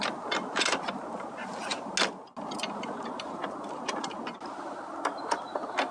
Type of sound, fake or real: real